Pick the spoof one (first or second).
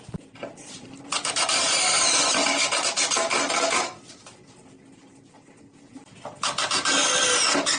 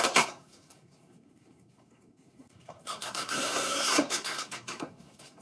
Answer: second